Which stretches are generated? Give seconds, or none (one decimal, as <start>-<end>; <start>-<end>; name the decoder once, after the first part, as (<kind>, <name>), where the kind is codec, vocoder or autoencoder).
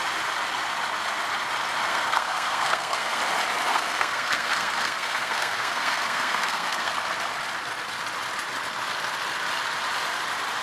1.9-3.2 (codec, SNAC); 3.7-6.9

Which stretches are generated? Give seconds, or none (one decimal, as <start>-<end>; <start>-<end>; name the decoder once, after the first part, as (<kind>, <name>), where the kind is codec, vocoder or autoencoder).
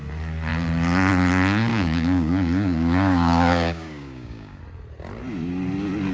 1.7-4.6 (codec, DAC)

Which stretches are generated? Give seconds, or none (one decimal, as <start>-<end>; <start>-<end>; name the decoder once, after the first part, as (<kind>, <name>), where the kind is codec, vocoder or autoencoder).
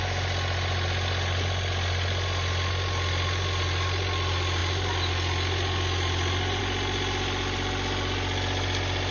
none